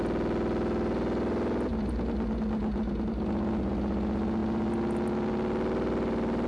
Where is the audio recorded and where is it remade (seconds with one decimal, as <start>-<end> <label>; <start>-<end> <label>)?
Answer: 0.0-6.5 recorded